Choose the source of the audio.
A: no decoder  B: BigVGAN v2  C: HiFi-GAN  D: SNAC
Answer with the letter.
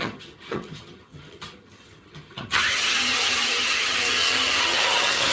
C